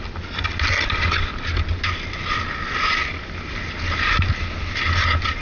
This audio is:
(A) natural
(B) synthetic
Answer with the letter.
A